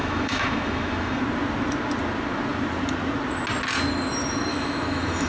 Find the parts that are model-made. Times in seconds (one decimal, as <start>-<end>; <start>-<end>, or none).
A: 0.0-1.2; 4.5-5.3